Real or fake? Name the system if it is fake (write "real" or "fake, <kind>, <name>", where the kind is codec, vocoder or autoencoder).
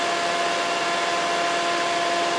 real